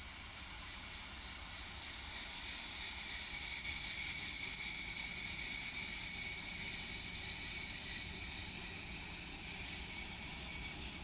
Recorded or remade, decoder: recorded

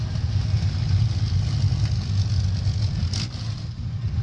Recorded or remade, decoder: recorded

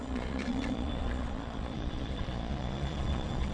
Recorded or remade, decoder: remade, vocoder, Vocos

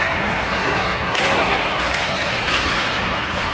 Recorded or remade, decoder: remade, codec, SNAC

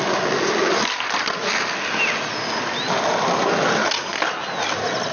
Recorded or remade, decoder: recorded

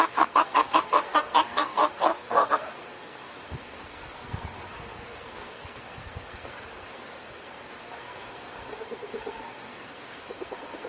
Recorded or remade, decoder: remade, codec, SNAC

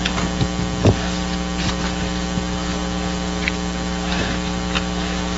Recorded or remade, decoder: recorded